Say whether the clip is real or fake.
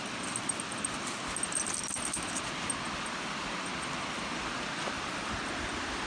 real